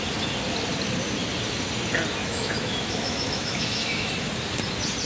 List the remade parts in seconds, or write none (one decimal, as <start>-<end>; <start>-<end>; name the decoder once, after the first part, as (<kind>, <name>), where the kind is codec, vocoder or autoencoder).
2.2-4.1 (autoencoder, DAC-VAE)